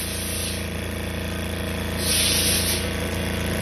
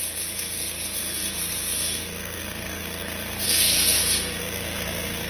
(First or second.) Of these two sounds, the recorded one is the first